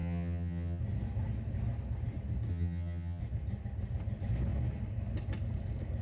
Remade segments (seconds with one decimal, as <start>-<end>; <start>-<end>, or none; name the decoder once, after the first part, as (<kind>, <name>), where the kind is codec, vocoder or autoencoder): 0.0-0.8 (vocoder, HiFi-GAN); 2.5-3.2